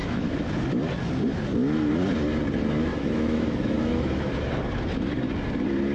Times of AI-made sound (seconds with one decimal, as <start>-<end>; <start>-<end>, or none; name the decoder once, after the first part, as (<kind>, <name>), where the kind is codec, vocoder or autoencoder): 0.0-0.5 (autoencoder, DAC-VAE); 2.9-4.3